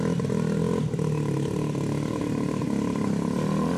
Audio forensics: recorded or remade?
recorded